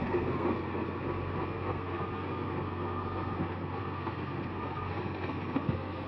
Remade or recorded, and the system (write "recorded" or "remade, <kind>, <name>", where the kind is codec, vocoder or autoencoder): remade, codec, SNAC